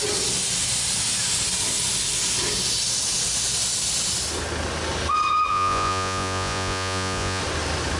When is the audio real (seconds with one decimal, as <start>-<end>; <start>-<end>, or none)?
0.0-5.5; 7.4-8.0